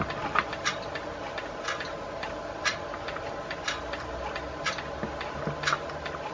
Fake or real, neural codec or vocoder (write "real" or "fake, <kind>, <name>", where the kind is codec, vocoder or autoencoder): real